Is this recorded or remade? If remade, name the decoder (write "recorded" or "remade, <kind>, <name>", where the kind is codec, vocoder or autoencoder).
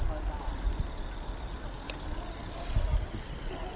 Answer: recorded